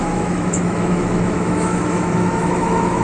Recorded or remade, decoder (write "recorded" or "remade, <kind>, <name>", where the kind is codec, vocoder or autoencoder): remade, autoencoder, DAC-VAE